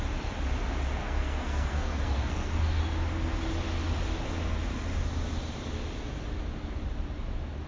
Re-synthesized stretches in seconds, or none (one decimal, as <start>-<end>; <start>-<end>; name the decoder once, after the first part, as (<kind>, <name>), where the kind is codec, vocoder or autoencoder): 1.0-2.8 (codec, SNAC)